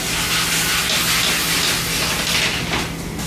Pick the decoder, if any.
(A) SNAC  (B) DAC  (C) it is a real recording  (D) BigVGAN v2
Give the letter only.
C